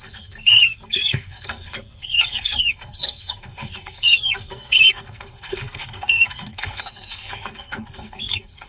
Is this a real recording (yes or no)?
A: no